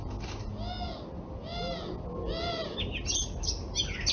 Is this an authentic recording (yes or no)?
yes